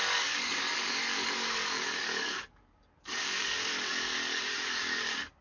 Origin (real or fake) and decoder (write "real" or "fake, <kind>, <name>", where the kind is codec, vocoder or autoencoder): fake, codec, DAC